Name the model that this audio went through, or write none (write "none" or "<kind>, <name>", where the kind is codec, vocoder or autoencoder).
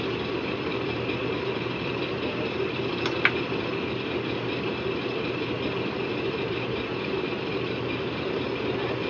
none